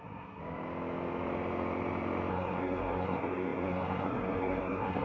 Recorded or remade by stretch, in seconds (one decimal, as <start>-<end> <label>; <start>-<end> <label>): 0.0-0.4 remade; 0.4-2.3 recorded; 2.3-5.0 remade